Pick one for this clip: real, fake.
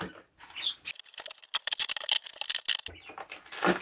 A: real